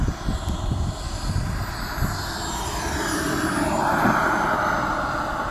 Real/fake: real